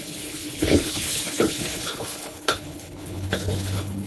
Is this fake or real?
fake